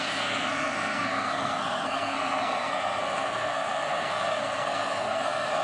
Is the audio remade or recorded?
remade